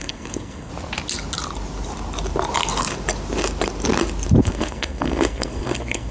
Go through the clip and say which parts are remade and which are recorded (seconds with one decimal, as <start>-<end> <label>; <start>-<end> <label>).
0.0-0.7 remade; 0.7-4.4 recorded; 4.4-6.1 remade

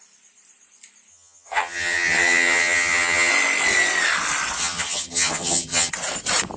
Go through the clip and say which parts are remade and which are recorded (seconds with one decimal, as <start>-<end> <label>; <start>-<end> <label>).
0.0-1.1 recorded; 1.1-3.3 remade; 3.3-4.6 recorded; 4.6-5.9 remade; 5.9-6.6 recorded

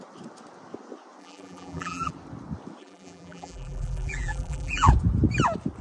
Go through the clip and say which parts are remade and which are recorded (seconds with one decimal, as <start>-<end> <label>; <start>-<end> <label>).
0.0-1.2 recorded; 1.2-2.1 remade; 2.1-2.8 recorded; 2.8-4.9 remade; 4.9-5.8 recorded

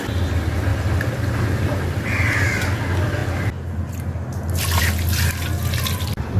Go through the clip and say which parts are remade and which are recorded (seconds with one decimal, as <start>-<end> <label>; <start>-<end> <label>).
0.0-6.4 recorded

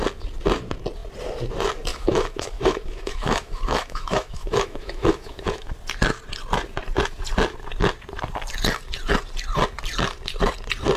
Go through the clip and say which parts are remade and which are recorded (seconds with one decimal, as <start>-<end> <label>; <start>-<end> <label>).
0.0-1.9 recorded; 1.9-5.7 remade; 5.7-11.0 recorded